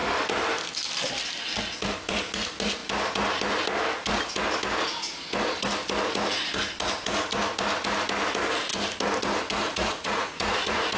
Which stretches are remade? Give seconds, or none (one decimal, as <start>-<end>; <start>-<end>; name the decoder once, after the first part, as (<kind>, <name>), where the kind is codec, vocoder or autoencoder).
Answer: 9.6-11.0 (vocoder, Vocos)